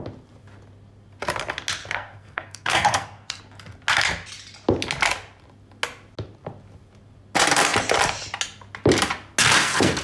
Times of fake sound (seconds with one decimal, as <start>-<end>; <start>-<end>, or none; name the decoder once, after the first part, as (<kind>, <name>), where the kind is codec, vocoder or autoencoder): 1.8-3.4 (codec, SNAC); 9.4-10.0